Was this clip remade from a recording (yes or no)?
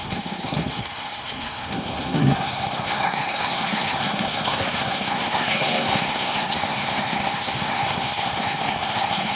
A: yes